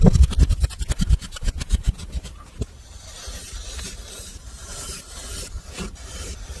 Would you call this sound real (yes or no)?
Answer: yes